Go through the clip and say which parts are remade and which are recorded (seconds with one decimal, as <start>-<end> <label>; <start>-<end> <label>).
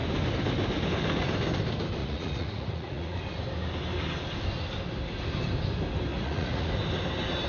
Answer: 0.0-2.0 recorded; 2.0-3.2 remade; 3.2-6.1 recorded; 6.1-6.7 remade; 6.7-7.5 recorded